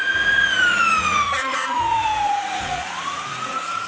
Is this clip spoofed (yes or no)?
yes